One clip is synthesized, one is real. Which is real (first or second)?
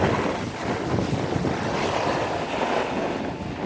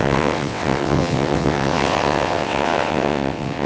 first